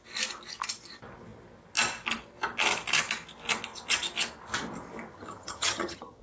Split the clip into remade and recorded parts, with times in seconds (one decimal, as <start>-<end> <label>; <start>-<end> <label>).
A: 0.0-5.1 recorded; 5.1-6.2 remade